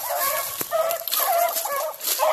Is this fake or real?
real